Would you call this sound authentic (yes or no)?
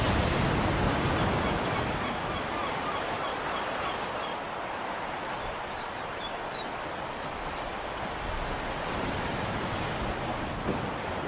yes